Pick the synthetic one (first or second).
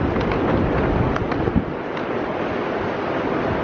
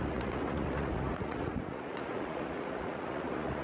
second